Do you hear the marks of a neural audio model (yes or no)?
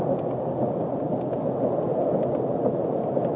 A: no